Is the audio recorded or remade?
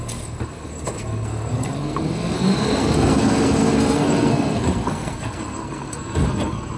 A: remade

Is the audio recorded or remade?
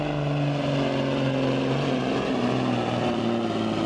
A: recorded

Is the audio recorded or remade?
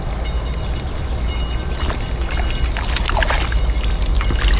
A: recorded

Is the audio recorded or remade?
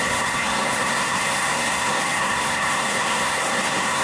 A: remade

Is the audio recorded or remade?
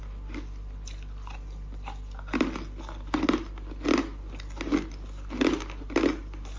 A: recorded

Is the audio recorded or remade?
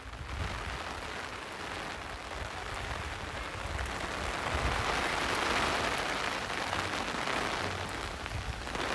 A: recorded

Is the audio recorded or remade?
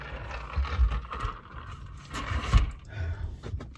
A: recorded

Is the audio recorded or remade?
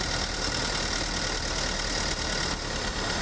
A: recorded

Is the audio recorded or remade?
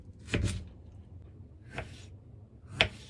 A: recorded